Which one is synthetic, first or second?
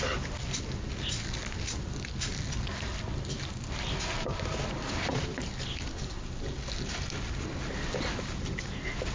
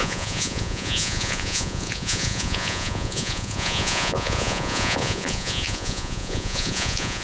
second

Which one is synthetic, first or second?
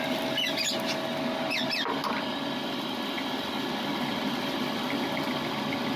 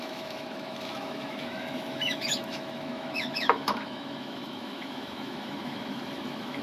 second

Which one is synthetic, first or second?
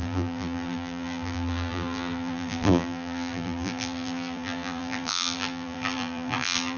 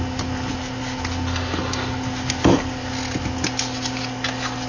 first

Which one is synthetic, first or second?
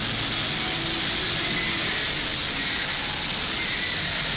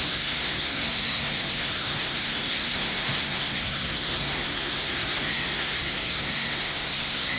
second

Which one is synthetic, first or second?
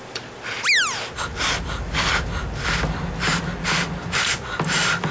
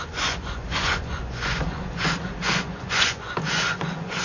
second